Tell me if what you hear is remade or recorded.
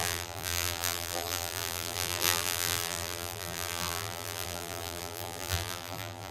remade